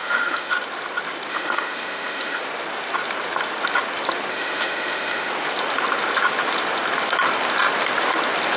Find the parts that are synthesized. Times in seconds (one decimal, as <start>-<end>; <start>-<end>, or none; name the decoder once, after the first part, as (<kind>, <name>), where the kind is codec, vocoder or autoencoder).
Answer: 0.0-0.5 (autoencoder, DAC-VAE); 1.3-2.4; 4.3-5.3